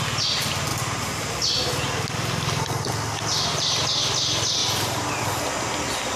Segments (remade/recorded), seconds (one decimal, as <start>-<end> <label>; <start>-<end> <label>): 0.0-0.7 recorded; 0.7-1.7 remade; 1.7-3.3 recorded; 3.3-3.8 remade; 3.8-4.6 recorded; 4.6-5.2 remade; 5.2-6.2 recorded